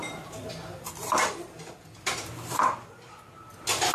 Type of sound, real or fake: real